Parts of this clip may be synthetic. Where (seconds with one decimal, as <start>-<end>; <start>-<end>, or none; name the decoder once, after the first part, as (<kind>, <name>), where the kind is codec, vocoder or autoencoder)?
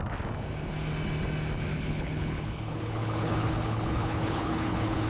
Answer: 1.7-5.1 (codec, HILCodec)